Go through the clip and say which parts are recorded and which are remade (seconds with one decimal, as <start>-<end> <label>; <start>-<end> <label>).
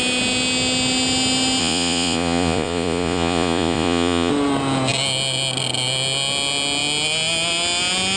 0.0-1.6 recorded; 1.6-4.3 remade; 4.3-8.2 recorded